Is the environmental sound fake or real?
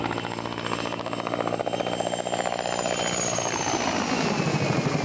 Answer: real